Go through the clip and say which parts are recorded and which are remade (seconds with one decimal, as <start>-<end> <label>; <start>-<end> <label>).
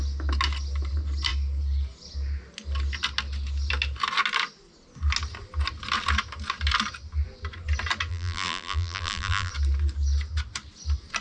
0.0-8.1 recorded; 8.1-9.5 remade; 9.5-11.2 recorded